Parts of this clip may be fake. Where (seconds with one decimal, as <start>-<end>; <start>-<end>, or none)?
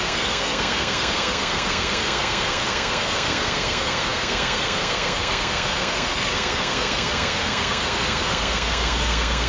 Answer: 0.0-9.5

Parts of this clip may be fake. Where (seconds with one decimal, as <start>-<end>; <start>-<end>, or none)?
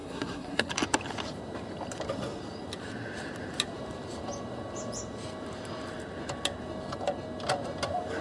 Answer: 0.0-0.7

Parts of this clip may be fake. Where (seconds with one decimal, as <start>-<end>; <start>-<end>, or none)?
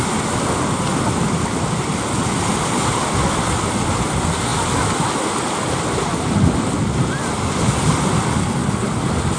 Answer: none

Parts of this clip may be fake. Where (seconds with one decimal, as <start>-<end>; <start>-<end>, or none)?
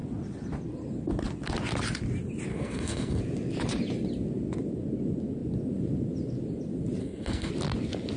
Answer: 2.5-3.2; 7.0-7.5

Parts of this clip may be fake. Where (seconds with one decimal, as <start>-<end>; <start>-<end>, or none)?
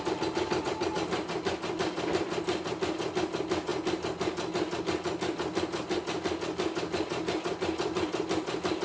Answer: none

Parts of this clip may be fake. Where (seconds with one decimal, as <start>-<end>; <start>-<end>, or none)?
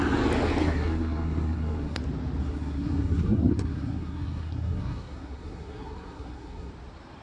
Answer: 0.6-2.0; 2.4-6.7